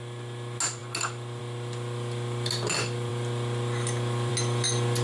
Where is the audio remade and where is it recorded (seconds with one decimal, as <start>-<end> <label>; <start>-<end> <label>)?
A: 0.0-5.0 recorded